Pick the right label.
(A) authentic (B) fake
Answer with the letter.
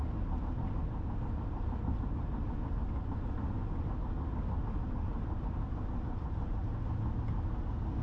A